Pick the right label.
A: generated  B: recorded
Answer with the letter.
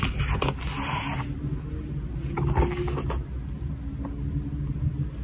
B